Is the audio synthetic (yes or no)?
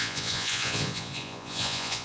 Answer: yes